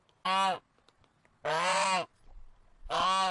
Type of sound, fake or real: real